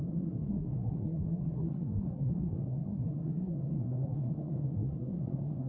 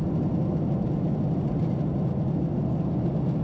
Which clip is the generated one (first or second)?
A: first